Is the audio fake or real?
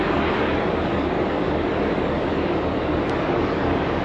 fake